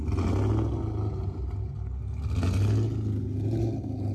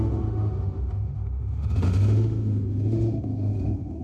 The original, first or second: first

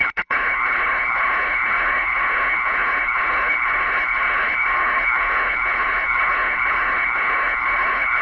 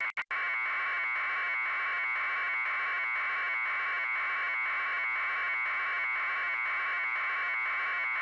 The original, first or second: second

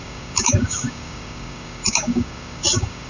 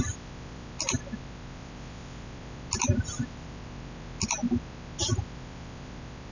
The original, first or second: second